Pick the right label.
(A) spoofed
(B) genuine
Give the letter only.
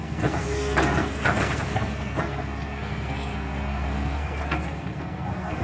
A